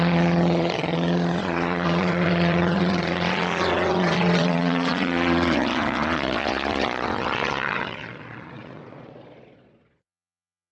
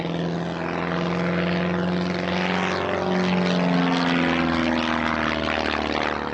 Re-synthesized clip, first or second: first